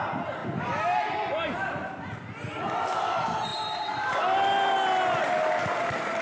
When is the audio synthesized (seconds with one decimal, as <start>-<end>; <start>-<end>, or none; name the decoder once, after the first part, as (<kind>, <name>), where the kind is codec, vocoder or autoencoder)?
none